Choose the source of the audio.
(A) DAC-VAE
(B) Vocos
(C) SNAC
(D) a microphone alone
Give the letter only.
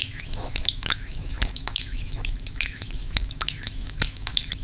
A